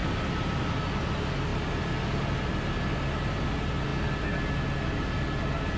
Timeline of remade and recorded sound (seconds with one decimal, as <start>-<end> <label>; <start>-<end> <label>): 0.0-5.8 recorded